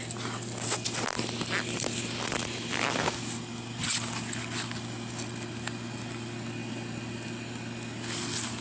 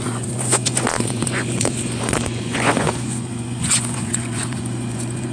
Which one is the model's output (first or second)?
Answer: second